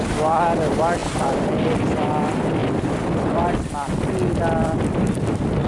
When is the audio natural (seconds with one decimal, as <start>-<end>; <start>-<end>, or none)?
0.0-5.7

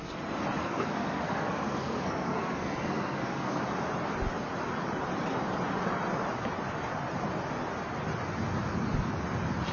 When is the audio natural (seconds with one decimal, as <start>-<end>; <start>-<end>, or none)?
0.0-0.6; 3.6-9.7

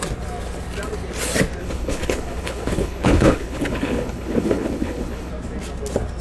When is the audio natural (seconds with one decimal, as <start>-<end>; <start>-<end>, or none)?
0.0-1.6; 5.3-6.2

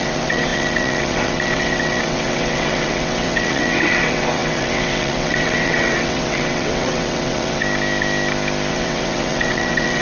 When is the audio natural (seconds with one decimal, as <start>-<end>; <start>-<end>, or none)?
7.6-8.7

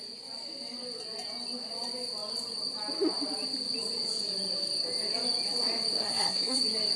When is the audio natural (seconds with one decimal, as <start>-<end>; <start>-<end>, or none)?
0.0-6.0; 6.6-7.0